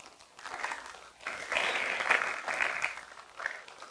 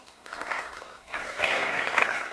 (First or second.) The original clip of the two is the first